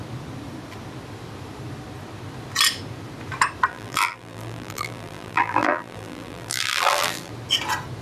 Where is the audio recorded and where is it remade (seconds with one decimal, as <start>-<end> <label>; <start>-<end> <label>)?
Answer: 0.0-3.7 recorded; 3.7-7.3 remade; 7.3-8.0 recorded